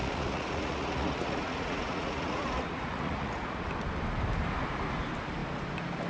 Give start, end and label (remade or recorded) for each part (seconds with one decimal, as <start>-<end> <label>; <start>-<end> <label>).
0.0-3.7 remade; 3.7-6.1 recorded